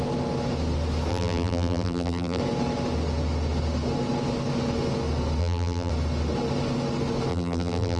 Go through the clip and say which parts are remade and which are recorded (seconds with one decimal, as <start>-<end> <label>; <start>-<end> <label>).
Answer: 0.0-1.1 recorded; 1.1-2.4 remade; 2.4-5.4 recorded; 5.4-5.9 remade; 5.9-7.3 recorded; 7.3-8.0 remade